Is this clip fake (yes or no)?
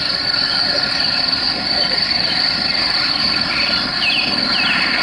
yes